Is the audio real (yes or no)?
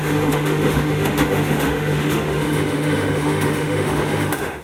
no